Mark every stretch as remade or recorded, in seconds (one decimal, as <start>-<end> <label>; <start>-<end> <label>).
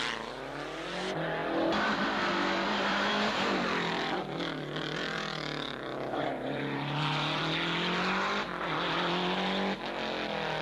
0.0-2.9 recorded; 2.9-7.4 remade; 7.4-10.6 recorded